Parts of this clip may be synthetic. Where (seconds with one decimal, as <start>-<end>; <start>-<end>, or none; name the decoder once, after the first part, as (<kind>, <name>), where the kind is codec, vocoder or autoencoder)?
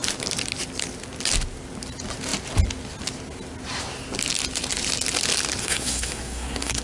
5.6-6.8 (codec, SNAC)